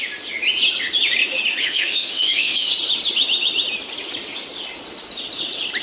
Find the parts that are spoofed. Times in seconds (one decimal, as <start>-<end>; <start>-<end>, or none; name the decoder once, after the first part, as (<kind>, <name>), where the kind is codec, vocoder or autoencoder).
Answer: 1.6-2.7 (autoencoder, DAC-VAE)